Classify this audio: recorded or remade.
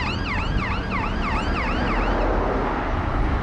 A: recorded